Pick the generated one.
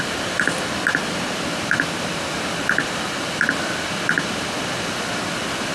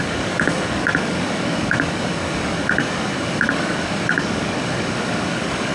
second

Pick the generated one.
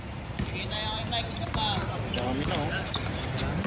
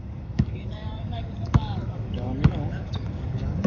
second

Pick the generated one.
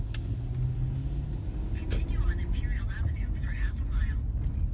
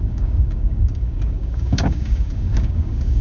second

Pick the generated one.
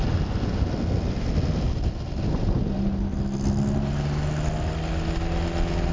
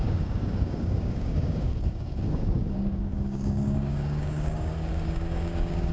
second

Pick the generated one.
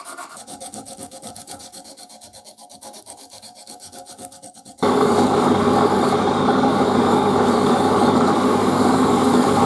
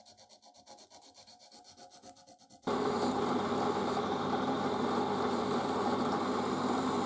first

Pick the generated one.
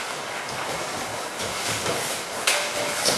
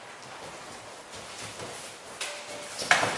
first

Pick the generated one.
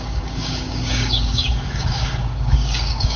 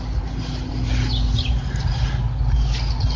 first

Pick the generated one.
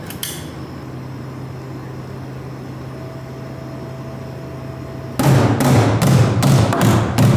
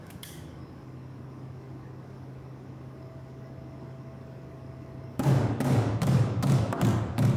second